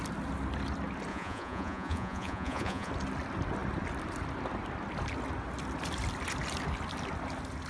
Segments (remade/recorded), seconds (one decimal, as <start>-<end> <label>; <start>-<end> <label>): 0.0-1.1 recorded; 1.1-2.9 remade; 2.9-7.7 recorded